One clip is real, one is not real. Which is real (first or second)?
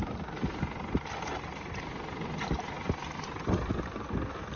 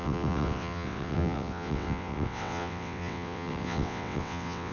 first